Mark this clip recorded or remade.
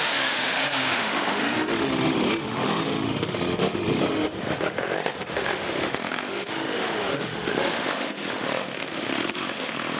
remade